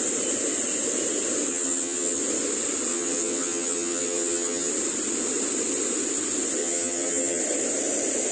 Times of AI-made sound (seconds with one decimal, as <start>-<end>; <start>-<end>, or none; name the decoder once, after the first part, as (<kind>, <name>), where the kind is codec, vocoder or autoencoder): 1.5-2.2 (vocoder, HiFi-GAN); 2.9-4.7; 6.6-7.4